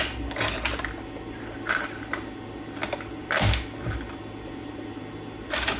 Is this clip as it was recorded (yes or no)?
yes